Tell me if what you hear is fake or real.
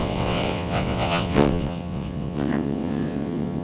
fake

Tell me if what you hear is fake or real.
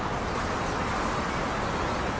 real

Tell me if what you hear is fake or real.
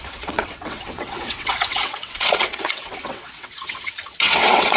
fake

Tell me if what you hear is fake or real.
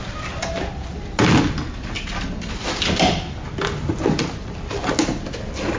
real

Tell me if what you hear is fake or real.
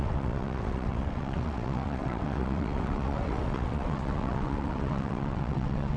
fake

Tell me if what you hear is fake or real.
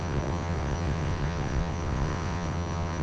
fake